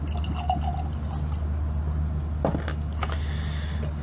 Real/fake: real